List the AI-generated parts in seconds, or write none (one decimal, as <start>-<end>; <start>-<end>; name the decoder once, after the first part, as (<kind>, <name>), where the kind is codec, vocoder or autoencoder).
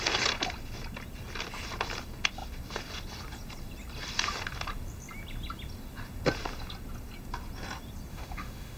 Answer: 8.1-8.8 (autoencoder, DAC-VAE)